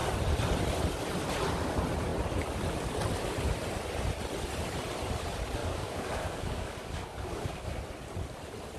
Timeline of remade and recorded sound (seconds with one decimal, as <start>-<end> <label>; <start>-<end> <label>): 0.0-5.6 recorded; 5.6-7.8 remade; 7.8-8.8 recorded